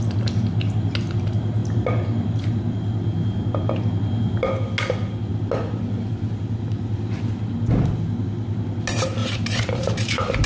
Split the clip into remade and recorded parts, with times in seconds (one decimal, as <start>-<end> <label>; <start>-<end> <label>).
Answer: 0.0-9.2 recorded; 9.2-10.5 remade